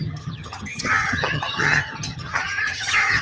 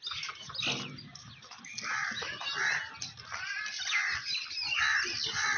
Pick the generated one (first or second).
first